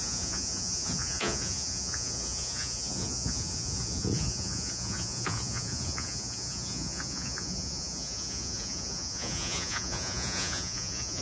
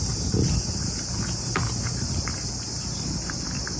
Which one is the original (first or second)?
second